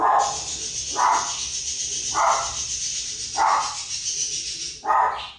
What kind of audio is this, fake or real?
real